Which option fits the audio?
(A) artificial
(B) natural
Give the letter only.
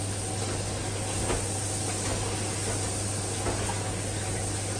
B